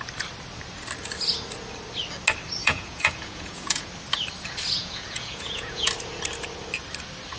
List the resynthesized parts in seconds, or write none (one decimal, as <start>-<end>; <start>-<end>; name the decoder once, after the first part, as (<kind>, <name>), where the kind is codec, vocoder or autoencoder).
2.6-3.9 (vocoder, Vocos); 4.8-5.9